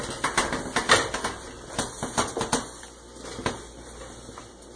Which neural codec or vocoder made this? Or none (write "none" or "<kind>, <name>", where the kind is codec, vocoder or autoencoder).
none